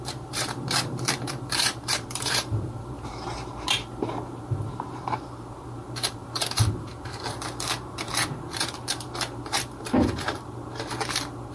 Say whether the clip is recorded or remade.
remade